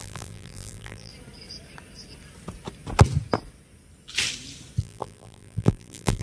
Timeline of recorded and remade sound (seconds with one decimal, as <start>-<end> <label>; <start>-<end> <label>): 0.0-1.1 remade; 1.1-4.8 recorded; 4.8-6.2 remade